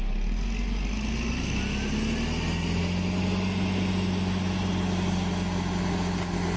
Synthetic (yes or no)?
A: no